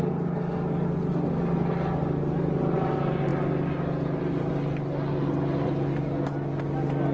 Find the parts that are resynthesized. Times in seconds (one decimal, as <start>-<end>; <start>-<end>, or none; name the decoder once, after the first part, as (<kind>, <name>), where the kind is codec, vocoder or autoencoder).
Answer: none